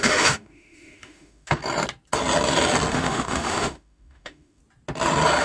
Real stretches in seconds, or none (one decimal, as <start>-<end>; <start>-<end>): 1.6-2.9; 4.6-5.4